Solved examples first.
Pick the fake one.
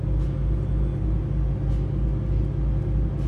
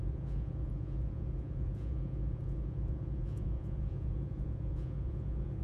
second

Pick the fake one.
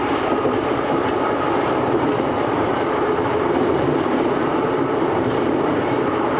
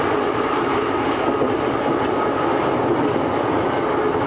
first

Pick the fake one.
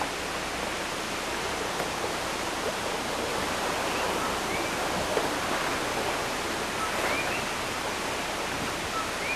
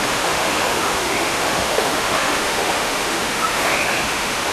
second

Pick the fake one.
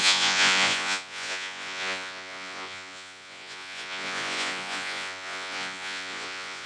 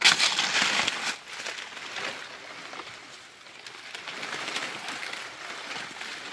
first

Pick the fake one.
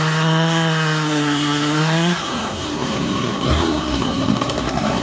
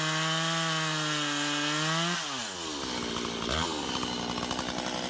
first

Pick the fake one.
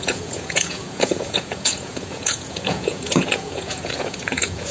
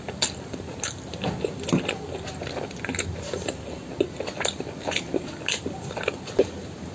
first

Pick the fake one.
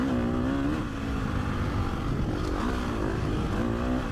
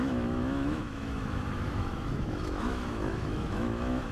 second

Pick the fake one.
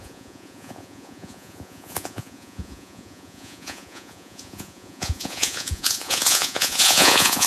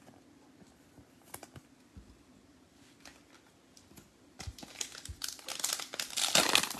first